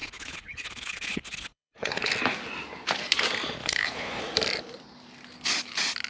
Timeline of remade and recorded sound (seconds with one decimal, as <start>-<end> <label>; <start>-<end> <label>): 0.0-2.1 remade; 2.1-3.6 recorded; 3.6-4.2 remade; 4.2-6.1 recorded

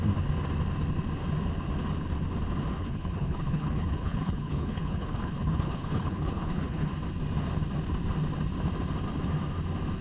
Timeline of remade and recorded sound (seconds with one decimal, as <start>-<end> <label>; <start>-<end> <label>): 0.0-2.8 recorded; 2.8-6.9 remade; 6.9-10.0 recorded

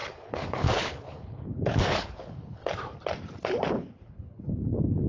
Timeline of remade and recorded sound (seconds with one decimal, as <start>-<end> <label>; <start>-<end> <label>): 0.0-2.6 remade; 2.6-3.7 recorded; 3.7-5.1 remade

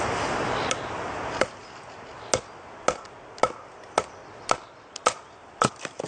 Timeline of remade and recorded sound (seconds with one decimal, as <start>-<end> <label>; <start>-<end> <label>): 0.0-6.1 recorded

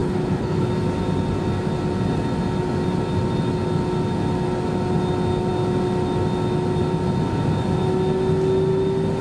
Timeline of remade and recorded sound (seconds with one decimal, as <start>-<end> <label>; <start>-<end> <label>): 0.0-0.7 remade; 0.7-9.2 recorded